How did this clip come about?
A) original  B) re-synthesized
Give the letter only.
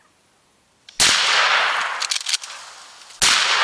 A